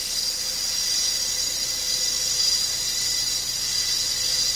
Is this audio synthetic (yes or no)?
no